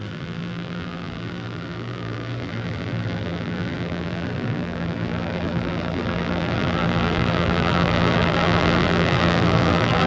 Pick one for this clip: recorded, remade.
remade